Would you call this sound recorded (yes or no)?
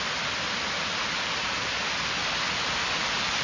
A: yes